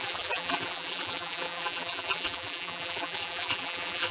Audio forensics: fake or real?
fake